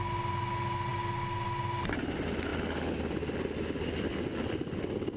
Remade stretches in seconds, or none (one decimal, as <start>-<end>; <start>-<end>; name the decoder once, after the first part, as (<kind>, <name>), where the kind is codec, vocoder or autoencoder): none